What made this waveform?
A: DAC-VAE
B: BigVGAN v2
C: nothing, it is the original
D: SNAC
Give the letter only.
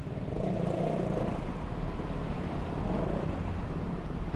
C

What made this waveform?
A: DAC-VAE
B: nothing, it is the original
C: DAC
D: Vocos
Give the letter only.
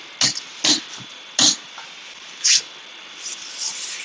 B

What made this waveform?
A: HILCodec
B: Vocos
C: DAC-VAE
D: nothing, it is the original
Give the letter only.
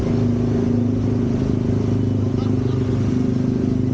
D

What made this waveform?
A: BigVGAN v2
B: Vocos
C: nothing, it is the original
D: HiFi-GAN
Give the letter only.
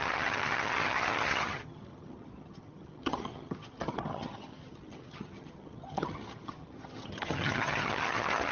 D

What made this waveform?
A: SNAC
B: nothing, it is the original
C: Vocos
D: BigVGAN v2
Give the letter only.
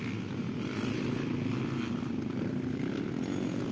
B